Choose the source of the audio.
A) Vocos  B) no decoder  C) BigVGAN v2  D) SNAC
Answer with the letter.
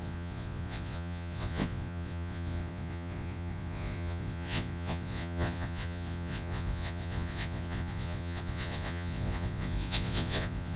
A